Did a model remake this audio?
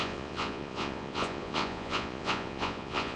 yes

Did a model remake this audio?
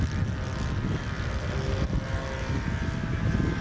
no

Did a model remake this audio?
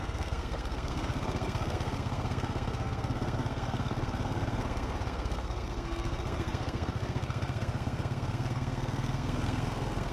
yes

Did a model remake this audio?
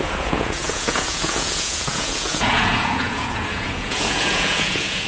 yes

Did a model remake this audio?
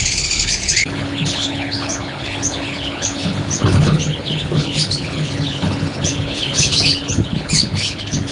yes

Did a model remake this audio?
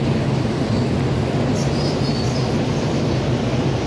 no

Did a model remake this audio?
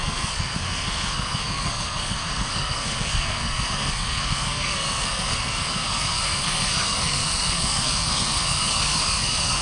yes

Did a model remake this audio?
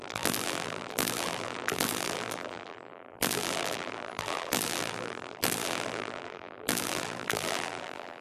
yes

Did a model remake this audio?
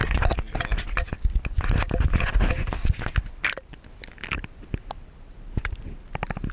no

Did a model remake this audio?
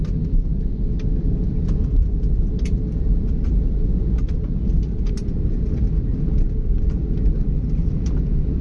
no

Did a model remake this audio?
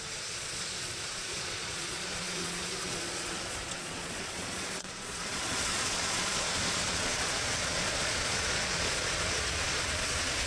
yes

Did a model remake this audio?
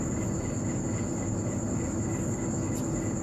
no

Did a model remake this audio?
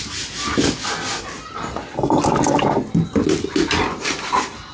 no